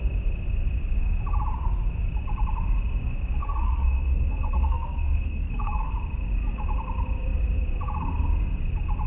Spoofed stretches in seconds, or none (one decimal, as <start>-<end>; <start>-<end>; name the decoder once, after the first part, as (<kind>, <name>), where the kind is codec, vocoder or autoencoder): 3.4-5.9 (codec, SNAC)

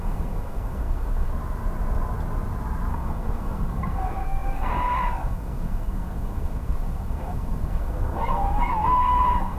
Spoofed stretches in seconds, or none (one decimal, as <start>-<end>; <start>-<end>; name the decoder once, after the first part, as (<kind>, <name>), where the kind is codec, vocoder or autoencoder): 0.0-1.3 (codec, SNAC); 2.9-9.6

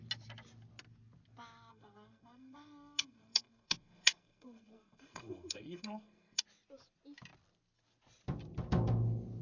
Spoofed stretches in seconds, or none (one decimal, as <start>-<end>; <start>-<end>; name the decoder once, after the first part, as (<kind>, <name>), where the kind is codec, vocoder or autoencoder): 1.7-6.4 (codec, SNAC)

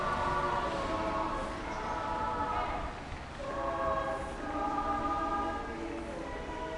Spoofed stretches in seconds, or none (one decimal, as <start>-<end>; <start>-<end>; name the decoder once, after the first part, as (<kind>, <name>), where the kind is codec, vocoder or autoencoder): none

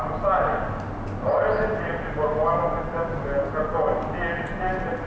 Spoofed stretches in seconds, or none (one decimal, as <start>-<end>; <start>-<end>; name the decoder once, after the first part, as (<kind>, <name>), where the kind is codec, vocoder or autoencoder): none